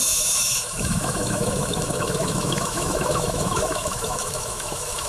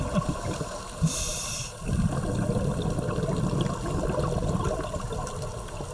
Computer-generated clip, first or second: first